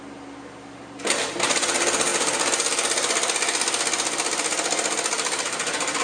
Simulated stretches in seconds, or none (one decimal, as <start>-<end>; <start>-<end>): none